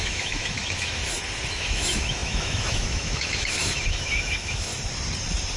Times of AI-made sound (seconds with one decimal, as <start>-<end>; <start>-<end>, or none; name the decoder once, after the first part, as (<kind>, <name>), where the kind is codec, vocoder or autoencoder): 0.0-1.0 (autoencoder, DAC-VAE); 1.5-4.7